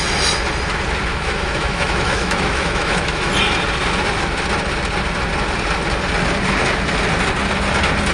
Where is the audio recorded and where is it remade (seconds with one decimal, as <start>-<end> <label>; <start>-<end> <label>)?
0.0-1.1 recorded; 1.1-3.3 remade; 3.3-8.1 recorded